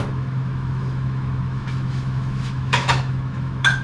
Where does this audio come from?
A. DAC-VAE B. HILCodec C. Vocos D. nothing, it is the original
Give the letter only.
A